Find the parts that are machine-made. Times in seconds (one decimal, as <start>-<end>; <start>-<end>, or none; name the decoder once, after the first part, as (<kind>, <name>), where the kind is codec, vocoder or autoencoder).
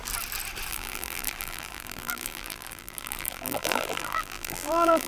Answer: 0.7-5.1 (vocoder, BigVGAN v2)